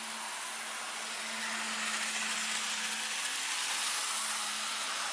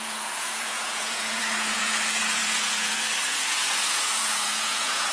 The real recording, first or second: first